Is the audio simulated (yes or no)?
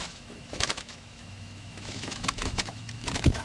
yes